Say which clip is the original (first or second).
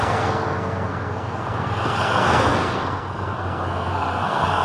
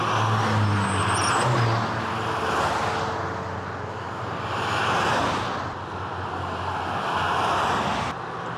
second